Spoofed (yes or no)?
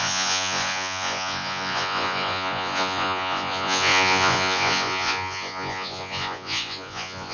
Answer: yes